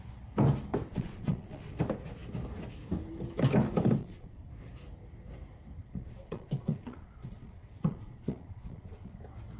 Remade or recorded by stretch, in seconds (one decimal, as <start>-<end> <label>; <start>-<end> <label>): 0.0-0.9 recorded; 0.9-1.7 remade; 1.7-4.0 recorded; 4.0-4.5 remade; 4.5-5.8 recorded; 5.8-9.2 remade; 9.2-9.6 recorded